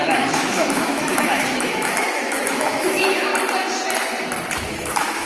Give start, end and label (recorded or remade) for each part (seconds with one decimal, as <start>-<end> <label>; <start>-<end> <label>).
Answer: 0.0-3.3 remade; 3.3-4.7 recorded; 4.7-5.3 remade